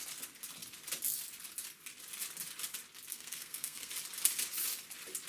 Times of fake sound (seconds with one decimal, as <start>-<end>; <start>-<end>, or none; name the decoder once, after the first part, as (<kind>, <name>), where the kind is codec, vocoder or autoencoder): 3.1-3.9 (codec, SNAC)